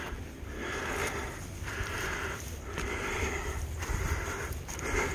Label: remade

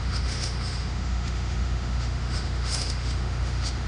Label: remade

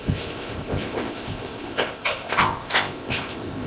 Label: remade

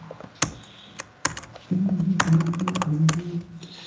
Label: recorded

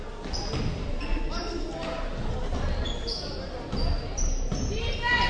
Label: recorded